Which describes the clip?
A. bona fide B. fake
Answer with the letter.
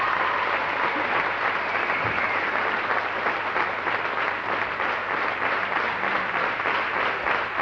A